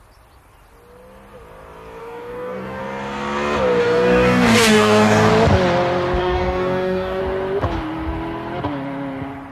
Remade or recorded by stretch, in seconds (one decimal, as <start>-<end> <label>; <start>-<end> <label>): 0.0-2.0 recorded; 2.0-2.8 remade; 2.8-3.8 recorded; 3.8-5.3 remade; 5.3-6.2 recorded; 6.2-7.2 remade; 7.2-9.5 recorded